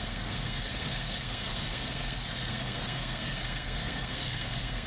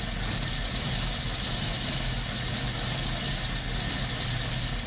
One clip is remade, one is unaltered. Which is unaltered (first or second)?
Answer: second